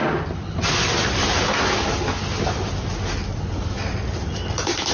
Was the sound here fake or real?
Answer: real